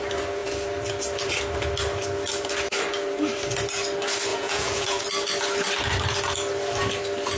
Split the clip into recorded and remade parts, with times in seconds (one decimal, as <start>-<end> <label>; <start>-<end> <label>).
0.0-4.3 recorded; 4.3-5.0 remade; 5.0-7.4 recorded